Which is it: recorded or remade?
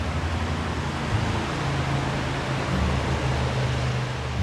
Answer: recorded